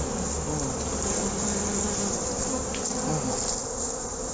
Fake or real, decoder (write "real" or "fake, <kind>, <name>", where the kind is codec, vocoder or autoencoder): real